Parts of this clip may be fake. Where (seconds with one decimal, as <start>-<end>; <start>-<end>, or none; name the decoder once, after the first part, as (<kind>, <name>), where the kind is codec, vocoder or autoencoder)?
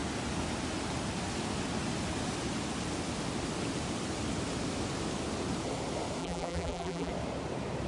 6.2-7.1 (vocoder, BigVGAN v2)